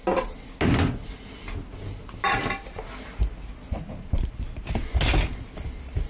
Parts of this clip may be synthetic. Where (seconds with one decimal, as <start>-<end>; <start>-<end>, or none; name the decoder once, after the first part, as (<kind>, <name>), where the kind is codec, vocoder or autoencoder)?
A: none